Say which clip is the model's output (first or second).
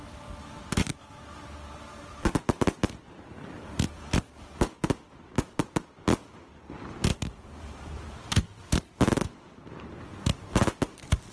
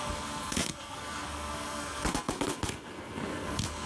second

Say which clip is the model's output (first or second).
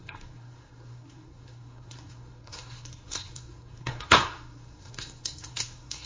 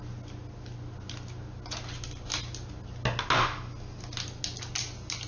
first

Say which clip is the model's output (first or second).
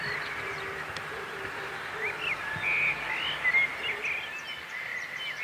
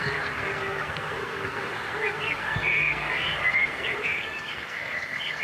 second